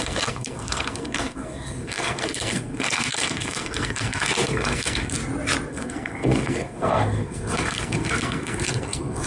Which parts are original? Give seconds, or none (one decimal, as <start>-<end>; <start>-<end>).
5.2-5.7